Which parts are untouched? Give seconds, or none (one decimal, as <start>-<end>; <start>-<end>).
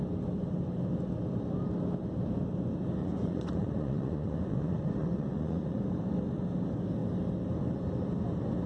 0.0-3.0; 5.9-8.7